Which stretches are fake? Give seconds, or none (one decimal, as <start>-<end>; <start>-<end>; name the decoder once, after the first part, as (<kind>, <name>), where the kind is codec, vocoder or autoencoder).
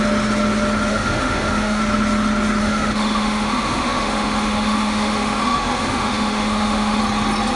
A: 0.9-1.8 (autoencoder, DAC-VAE); 2.6-7.0